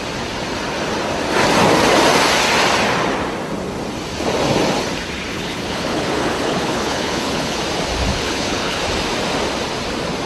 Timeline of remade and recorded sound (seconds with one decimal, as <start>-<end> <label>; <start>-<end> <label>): 0.0-5.3 recorded; 5.3-7.6 remade; 7.6-8.1 recorded; 8.1-8.8 remade; 8.8-10.3 recorded